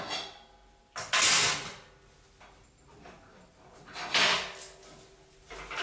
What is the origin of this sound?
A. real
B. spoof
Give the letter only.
A